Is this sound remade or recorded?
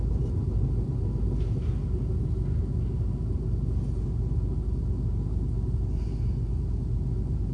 recorded